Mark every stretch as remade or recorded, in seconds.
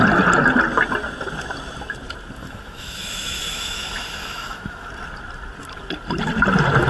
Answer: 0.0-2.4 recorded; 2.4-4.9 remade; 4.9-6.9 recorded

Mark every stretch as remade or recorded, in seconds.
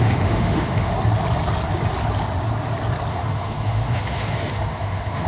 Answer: 0.0-0.9 remade; 0.9-3.1 recorded; 3.1-5.3 remade